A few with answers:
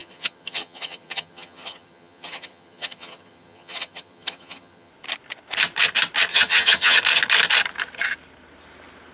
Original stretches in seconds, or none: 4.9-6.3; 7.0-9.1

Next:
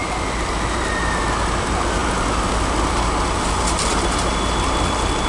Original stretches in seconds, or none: 0.0-5.3

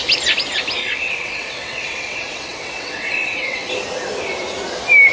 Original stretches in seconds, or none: 0.0-0.8; 3.7-5.1

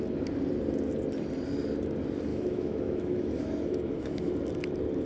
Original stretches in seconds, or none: 0.0-2.3; 4.3-5.1

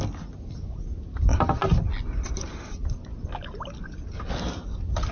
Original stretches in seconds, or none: 0.0-5.1

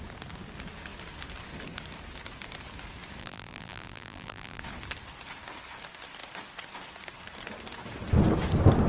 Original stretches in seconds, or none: 0.0-3.2; 4.6-8.9

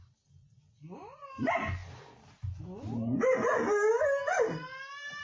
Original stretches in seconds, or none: 0.0-5.2